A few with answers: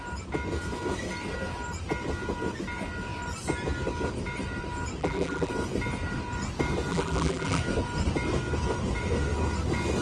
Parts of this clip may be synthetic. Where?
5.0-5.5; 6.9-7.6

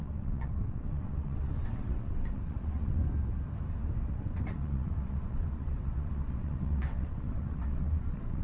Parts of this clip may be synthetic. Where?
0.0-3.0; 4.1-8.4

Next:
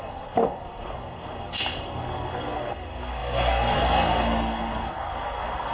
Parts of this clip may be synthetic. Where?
0.0-5.7

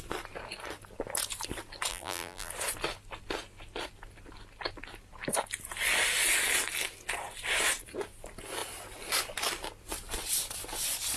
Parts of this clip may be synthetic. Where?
1.9-2.5

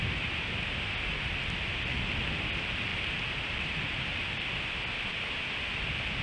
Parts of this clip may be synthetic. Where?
none